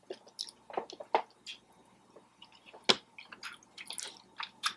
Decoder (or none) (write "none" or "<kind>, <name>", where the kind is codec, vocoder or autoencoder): none